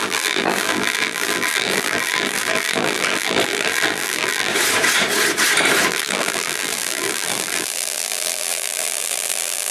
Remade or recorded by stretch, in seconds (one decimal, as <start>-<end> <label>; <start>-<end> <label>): 0.0-4.5 remade; 4.5-5.9 recorded; 5.9-9.7 remade